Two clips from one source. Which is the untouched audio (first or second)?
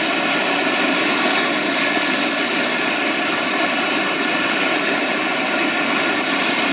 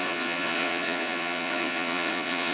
first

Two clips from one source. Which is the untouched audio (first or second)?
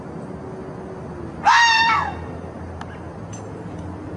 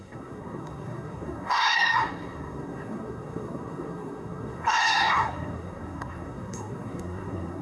first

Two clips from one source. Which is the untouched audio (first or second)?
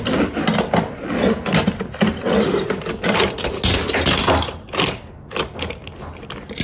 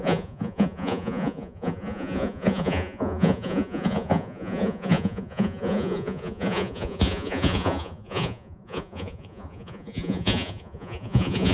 first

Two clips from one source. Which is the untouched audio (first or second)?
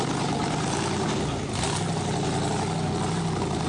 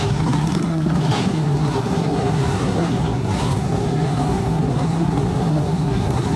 first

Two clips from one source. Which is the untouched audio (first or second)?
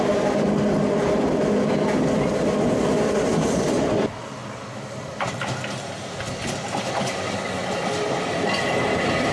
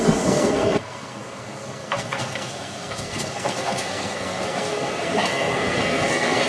first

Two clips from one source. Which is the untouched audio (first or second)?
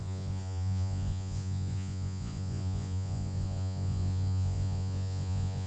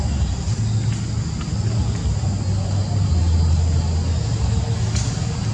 second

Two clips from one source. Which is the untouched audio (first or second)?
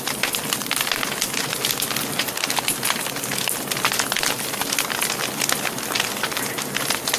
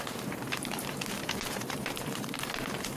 first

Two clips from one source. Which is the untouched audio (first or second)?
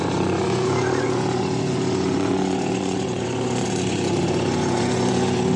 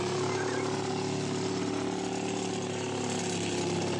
second